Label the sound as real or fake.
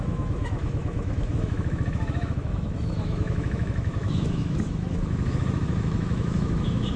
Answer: fake